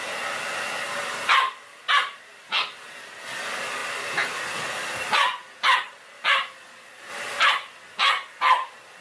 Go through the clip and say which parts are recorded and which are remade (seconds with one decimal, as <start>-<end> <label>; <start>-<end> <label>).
0.0-2.3 recorded; 2.3-3.0 remade; 3.0-9.0 recorded